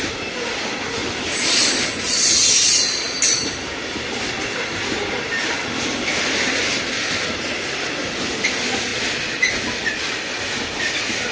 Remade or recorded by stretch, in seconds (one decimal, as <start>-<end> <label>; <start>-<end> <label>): 0.0-1.0 remade; 1.0-5.8 recorded; 5.8-8.9 remade; 8.9-9.6 recorded; 9.6-11.3 remade